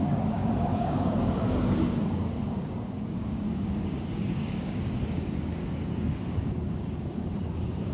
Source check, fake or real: fake